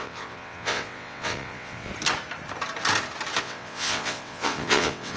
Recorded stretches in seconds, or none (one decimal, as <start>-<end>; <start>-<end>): 1.9-3.4